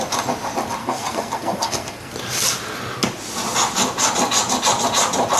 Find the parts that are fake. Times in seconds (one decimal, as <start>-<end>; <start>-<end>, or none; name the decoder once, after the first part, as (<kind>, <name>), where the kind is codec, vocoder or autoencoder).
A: 0.8-2.1 (codec, SNAC)